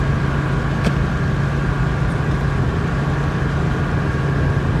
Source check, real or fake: real